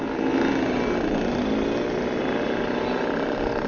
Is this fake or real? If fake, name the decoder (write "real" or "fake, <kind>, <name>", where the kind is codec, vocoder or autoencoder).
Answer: real